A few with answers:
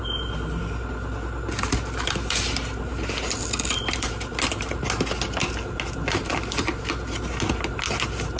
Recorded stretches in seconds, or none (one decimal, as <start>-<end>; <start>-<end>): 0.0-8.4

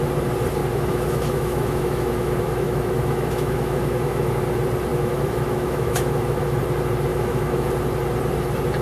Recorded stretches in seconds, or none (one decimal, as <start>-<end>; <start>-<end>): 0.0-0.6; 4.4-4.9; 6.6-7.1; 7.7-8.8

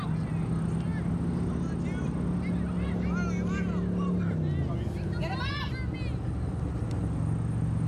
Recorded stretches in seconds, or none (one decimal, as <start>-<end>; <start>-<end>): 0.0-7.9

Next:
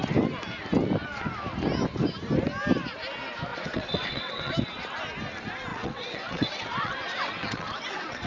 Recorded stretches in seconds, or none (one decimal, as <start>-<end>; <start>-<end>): 0.0-3.5; 4.5-5.7

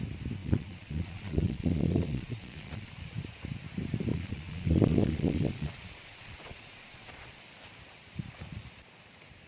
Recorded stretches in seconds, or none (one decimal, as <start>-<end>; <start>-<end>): 0.0-0.4; 2.9-4.1; 7.4-9.5

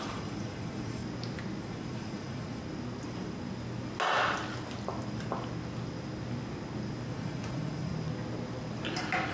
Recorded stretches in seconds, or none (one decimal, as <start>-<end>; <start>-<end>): 1.0-1.6; 2.6-7.1; 7.9-9.3

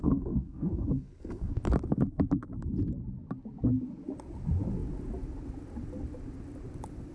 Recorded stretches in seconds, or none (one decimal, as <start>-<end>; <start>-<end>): 1.5-7.1

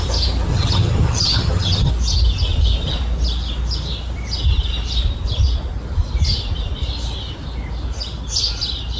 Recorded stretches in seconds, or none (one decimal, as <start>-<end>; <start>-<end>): 0.0-0.5; 1.9-9.0